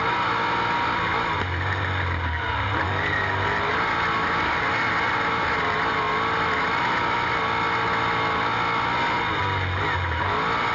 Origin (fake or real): real